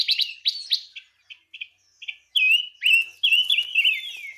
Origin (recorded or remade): recorded